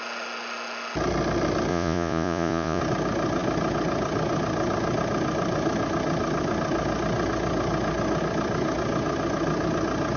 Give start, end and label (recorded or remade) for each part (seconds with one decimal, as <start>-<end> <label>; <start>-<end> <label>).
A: 0.0-1.7 recorded; 1.7-2.8 remade; 2.8-10.2 recorded